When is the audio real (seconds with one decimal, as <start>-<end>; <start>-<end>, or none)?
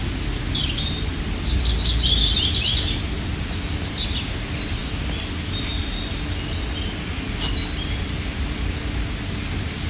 0.0-9.9